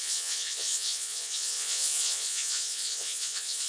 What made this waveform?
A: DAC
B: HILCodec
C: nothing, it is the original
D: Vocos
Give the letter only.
D